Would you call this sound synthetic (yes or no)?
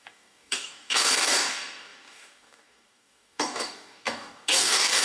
yes